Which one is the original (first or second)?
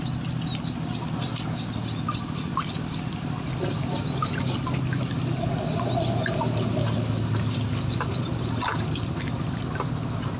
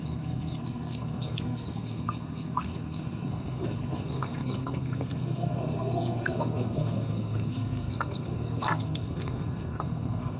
first